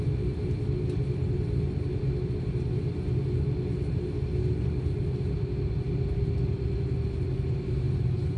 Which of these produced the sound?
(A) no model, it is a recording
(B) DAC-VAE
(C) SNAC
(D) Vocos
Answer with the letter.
A